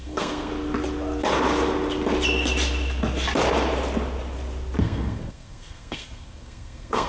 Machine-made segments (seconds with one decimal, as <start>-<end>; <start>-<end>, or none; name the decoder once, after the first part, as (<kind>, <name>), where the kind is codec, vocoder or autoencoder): 0.0-0.5 (codec, SNAC); 4.8-7.1